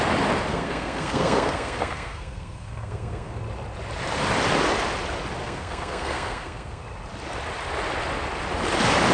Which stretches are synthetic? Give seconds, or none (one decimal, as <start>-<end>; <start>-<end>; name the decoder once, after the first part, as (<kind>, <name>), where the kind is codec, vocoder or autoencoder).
0.5-3.4 (codec, SNAC); 5.4-6.8